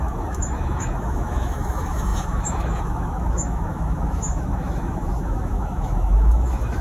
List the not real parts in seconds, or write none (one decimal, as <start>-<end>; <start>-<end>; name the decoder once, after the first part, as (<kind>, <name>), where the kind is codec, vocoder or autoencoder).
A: 0.0-6.8 (autoencoder, DAC-VAE)